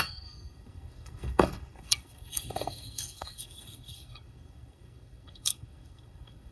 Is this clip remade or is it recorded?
remade